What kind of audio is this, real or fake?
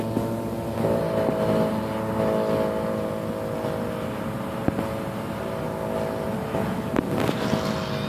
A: real